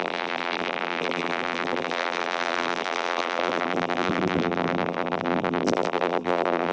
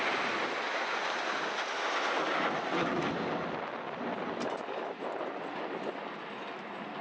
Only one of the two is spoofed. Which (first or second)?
first